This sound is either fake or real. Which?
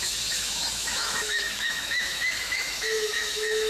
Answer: fake